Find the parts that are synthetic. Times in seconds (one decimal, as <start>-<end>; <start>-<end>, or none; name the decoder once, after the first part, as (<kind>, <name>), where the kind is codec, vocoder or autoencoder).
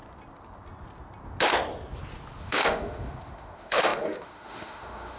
2.4-5.2 (autoencoder, DAC-VAE)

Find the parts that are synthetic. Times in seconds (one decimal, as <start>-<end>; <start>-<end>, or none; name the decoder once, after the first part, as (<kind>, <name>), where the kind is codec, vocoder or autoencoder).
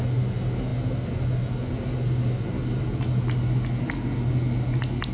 none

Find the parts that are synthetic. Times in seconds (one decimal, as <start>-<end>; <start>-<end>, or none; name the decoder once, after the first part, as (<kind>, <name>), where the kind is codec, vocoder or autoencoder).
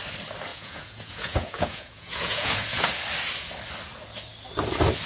0.5-2.9 (vocoder, Vocos)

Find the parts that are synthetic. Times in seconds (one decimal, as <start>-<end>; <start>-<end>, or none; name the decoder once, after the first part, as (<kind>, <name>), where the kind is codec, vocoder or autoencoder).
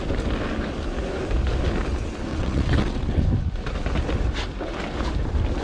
2.3-3.2 (vocoder, WaveNeXt)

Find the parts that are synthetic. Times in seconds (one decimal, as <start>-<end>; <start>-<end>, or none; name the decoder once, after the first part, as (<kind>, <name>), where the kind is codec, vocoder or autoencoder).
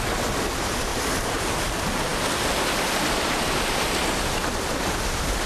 0.9-1.4 (vocoder, BigVGAN v2)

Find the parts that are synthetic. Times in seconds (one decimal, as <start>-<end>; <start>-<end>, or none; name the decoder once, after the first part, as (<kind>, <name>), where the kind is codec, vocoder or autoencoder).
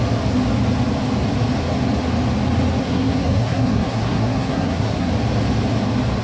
2.8-5.1 (codec, SNAC)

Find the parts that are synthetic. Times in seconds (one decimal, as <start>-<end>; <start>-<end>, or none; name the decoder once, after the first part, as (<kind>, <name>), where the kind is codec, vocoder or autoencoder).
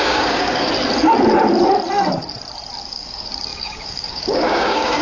0.0-0.7 (codec, DAC); 2.9-5.0